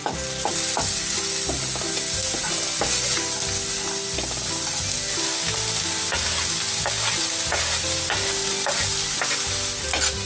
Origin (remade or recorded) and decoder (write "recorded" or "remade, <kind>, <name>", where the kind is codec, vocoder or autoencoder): recorded